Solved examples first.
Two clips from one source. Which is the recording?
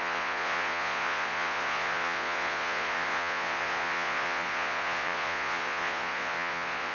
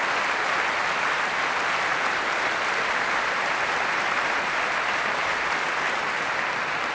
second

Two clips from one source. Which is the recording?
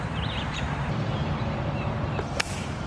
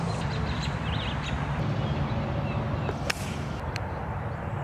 second